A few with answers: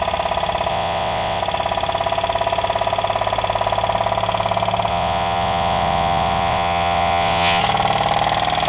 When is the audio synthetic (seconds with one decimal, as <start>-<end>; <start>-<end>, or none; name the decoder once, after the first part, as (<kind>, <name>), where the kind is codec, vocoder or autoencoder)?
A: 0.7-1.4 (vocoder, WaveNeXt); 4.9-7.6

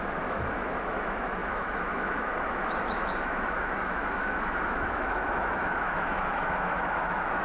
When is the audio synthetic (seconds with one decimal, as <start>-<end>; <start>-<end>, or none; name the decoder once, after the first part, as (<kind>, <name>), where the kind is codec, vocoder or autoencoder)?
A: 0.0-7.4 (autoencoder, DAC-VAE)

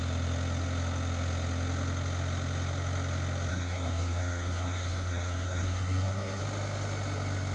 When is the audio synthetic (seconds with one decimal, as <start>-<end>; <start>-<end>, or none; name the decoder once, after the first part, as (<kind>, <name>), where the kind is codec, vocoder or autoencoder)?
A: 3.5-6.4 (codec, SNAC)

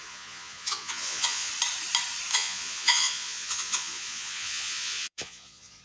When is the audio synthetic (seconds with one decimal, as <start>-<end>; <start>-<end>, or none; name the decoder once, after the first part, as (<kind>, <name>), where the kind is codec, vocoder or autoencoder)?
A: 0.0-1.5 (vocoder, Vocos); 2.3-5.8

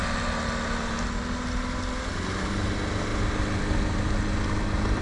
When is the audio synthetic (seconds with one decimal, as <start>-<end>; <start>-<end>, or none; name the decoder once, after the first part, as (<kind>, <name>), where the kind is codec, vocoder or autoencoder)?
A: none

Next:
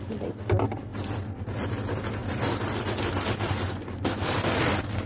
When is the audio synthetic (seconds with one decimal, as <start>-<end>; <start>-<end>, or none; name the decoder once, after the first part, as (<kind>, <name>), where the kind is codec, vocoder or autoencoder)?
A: 0.9-1.7 (vocoder, BigVGAN v2); 2.2-5.1